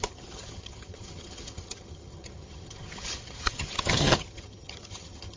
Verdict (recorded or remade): remade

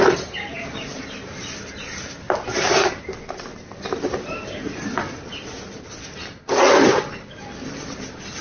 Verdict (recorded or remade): recorded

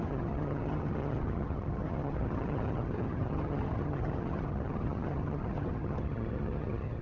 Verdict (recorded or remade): remade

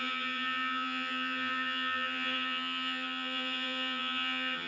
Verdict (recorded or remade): remade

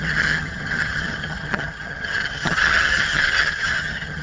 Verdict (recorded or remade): remade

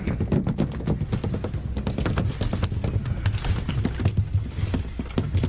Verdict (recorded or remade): recorded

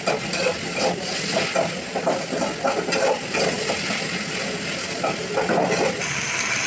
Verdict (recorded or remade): recorded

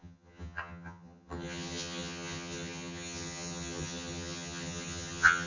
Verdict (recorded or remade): remade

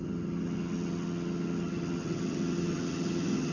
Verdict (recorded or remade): remade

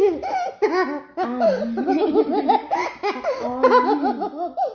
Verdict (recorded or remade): recorded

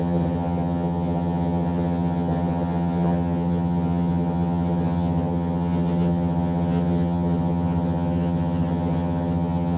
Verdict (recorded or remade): remade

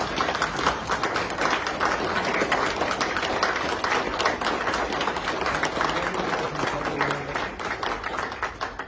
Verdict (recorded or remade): recorded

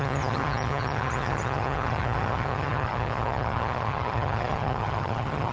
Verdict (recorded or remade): remade